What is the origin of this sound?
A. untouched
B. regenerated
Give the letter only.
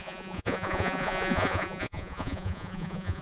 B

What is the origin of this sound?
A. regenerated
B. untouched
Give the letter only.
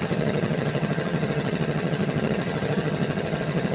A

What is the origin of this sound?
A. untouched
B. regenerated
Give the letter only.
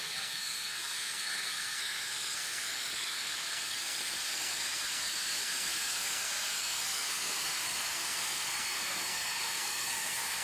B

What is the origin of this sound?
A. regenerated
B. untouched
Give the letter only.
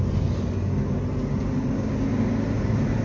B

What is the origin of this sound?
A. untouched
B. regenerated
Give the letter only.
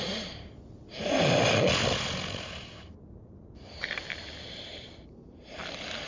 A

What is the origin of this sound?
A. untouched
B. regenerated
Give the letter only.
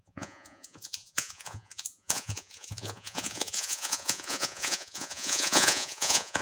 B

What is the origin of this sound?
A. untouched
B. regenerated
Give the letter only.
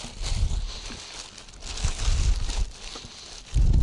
A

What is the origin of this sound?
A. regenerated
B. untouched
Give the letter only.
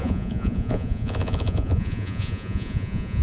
A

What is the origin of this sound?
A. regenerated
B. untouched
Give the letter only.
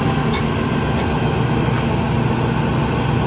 B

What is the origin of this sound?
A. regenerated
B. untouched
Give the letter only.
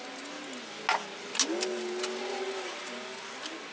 B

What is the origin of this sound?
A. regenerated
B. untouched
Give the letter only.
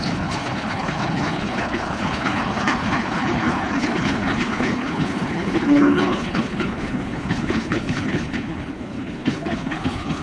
A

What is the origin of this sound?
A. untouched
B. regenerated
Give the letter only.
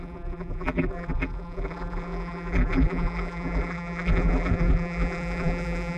B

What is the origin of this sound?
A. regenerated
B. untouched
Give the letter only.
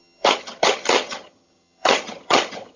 A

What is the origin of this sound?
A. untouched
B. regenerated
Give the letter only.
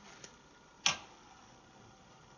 A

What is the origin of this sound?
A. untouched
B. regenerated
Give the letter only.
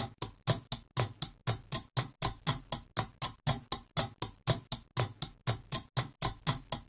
A